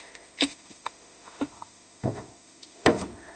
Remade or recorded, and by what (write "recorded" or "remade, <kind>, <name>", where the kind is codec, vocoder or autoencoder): remade, autoencoder, DAC-VAE